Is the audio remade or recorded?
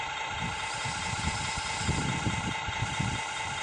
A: recorded